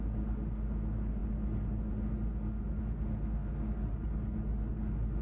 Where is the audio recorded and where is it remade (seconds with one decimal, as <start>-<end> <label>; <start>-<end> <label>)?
0.0-5.2 recorded